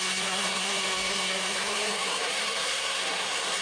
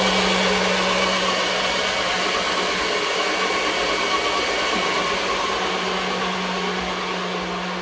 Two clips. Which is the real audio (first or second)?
second